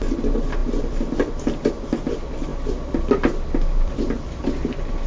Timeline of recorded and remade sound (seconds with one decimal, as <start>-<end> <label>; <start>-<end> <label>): 0.0-5.1 recorded